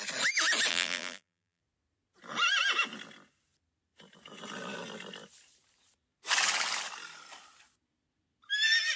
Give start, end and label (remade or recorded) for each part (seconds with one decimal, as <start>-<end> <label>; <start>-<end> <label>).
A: 0.0-0.7 recorded; 0.7-1.6 remade; 1.6-9.0 recorded